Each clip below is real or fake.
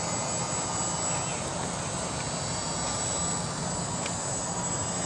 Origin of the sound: real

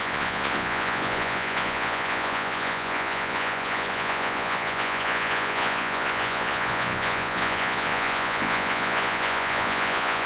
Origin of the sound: fake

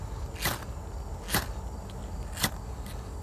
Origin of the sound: real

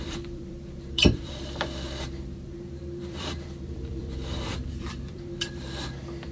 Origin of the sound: fake